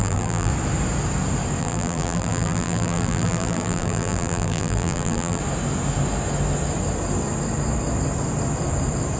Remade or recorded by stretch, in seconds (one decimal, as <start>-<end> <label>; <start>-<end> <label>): 0.0-0.5 remade; 0.5-1.6 recorded; 1.6-5.4 remade; 5.4-9.2 recorded